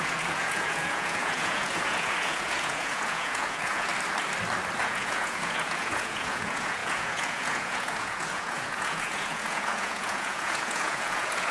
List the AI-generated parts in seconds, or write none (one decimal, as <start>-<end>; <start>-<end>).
0.0-3.9; 4.8-11.5